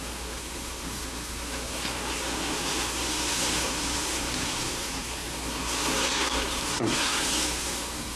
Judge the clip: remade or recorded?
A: remade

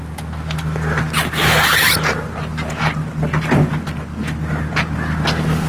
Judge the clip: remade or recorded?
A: recorded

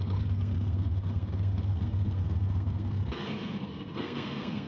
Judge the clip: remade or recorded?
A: remade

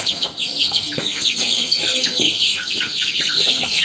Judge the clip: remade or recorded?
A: remade